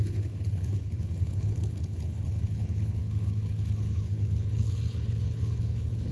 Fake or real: fake